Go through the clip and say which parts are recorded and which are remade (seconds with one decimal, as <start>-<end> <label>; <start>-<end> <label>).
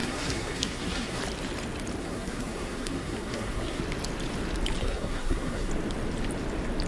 0.0-1.2 remade; 1.2-2.0 recorded; 2.0-3.8 remade; 3.8-4.8 recorded; 4.8-5.7 remade; 5.7-6.9 recorded